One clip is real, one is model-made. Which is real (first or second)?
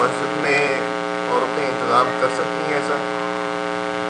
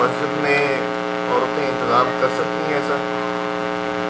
second